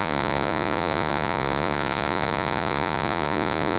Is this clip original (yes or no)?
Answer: no